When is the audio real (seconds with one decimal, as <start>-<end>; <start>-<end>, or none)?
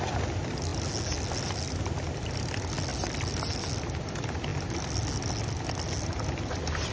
0.0-6.9